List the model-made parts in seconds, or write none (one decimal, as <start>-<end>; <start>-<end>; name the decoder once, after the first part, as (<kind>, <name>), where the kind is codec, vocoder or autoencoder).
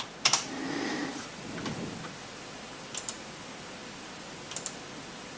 none